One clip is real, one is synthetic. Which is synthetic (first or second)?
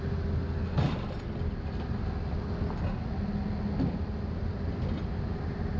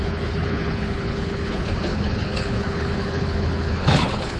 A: second